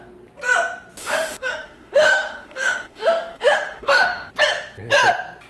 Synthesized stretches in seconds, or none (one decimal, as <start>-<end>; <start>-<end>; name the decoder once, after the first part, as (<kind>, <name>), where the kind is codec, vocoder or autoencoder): 1.0-4.3 (autoencoder, DAC-VAE)